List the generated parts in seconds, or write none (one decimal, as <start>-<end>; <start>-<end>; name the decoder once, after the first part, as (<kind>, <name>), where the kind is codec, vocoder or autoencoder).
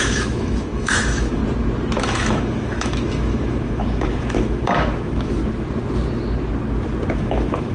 0.0-1.4 (autoencoder, DAC-VAE); 2.0-5.4; 7.1-7.7